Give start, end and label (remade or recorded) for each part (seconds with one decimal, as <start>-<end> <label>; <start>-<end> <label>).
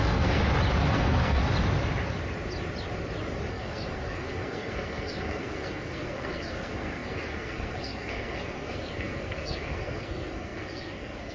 0.0-0.4 remade; 0.4-0.9 recorded; 0.9-1.4 remade; 1.4-3.5 recorded; 3.5-11.3 remade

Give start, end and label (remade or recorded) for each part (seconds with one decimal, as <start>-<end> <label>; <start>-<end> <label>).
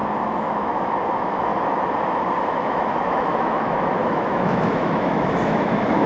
0.0-1.5 remade; 1.5-2.5 recorded; 2.5-6.1 remade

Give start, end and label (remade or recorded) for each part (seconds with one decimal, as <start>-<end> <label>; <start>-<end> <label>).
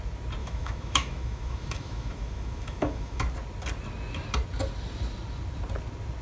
0.0-0.4 recorded; 0.4-3.2 remade; 3.2-6.2 recorded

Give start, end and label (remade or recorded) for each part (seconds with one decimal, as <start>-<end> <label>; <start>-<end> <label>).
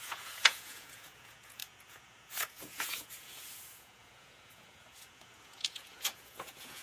0.0-6.8 remade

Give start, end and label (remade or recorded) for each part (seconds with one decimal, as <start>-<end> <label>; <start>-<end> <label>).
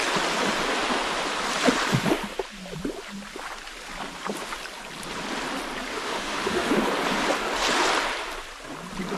0.0-5.9 recorded; 5.9-6.7 remade; 6.7-9.2 recorded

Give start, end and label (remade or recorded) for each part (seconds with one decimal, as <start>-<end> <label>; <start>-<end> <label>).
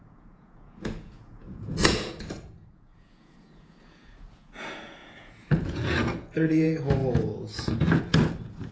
0.0-8.7 remade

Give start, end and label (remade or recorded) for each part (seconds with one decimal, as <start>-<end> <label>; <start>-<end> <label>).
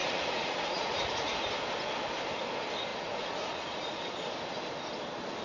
0.0-1.3 remade; 1.3-2.9 recorded; 2.9-4.0 remade; 4.0-5.4 recorded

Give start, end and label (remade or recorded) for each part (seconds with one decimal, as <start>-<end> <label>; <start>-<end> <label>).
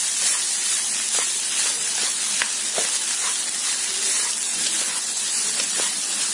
0.0-4.5 recorded; 4.5-5.5 remade; 5.5-6.3 recorded